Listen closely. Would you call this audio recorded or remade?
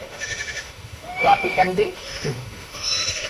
remade